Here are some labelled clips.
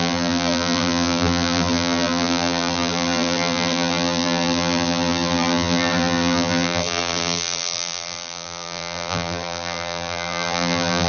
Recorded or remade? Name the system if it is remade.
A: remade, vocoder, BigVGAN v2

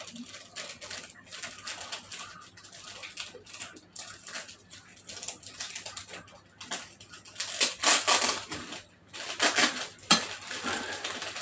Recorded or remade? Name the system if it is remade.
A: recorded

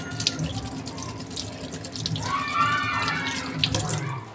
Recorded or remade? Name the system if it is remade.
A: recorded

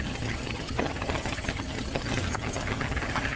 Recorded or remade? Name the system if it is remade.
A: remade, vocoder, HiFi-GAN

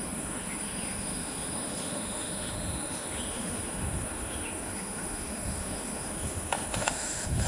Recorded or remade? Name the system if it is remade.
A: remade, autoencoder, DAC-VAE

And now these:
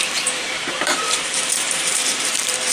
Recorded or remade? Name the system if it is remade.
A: remade, vocoder, BigVGAN v2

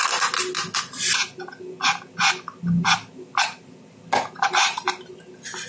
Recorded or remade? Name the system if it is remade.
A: recorded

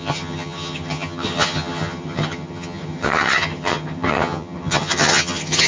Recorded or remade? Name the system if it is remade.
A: remade, vocoder, HiFi-GAN